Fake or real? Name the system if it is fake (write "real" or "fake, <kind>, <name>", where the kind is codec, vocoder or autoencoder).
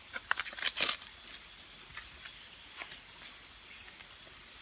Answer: real